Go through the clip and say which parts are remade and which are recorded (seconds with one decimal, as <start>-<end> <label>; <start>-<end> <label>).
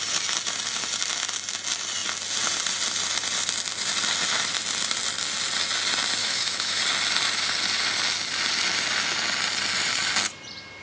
0.0-6.2 recorded; 6.2-6.8 remade; 6.8-10.8 recorded